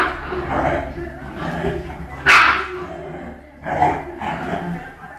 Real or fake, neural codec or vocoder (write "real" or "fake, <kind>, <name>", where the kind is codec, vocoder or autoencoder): real